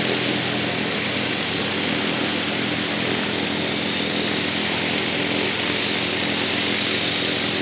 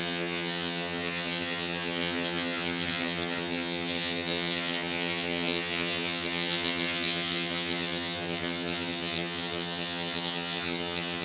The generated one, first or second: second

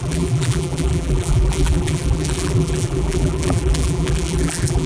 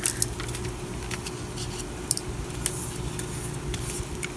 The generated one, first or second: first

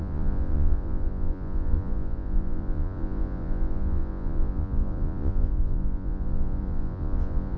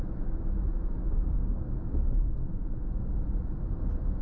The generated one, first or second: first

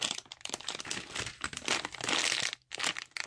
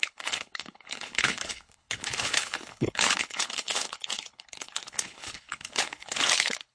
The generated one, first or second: second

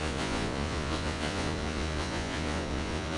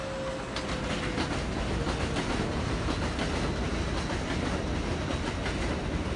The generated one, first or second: first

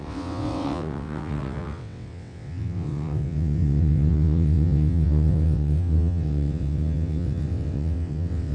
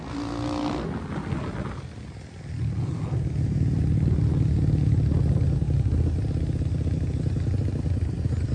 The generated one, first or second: first